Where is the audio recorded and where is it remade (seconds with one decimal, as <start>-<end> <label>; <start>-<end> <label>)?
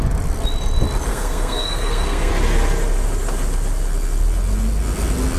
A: 0.0-1.1 recorded; 1.1-2.3 remade; 2.3-5.4 recorded